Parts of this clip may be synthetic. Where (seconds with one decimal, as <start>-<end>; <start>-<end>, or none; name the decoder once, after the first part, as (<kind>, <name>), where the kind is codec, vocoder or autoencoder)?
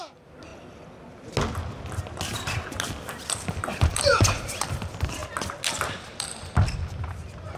0.0-0.5 (vocoder, BigVGAN v2); 3.1-5.2; 6.0-7.6